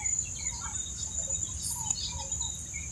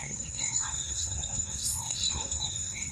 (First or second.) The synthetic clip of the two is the second